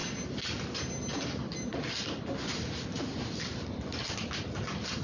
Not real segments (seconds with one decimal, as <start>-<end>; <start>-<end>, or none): none